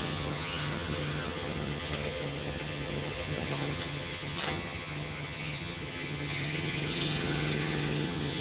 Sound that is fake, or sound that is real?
fake